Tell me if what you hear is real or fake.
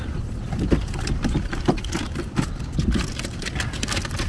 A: real